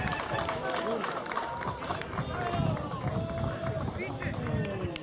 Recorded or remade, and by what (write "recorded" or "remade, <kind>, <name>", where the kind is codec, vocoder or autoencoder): recorded